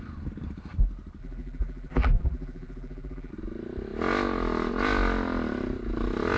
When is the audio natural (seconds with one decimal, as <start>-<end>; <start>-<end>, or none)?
0.0-1.2; 3.3-6.4